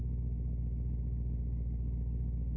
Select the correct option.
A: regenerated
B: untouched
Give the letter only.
B